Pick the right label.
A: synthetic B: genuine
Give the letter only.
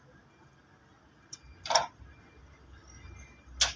B